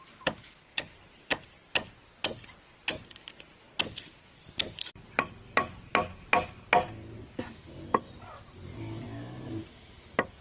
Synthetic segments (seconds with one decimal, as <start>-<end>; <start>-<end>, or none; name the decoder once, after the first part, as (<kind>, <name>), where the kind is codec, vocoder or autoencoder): none

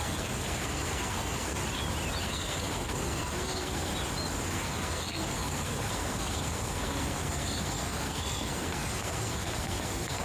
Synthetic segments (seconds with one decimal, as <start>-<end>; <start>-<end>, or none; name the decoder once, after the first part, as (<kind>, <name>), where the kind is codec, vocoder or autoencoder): 0.0-1.6 (codec, SNAC); 2.2-3.9; 4.5-10.2

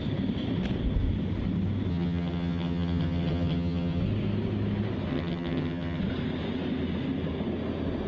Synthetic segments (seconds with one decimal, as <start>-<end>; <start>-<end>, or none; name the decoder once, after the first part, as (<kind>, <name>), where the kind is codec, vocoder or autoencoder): 1.9-4.0 (vocoder, HiFi-GAN); 5.1-6.0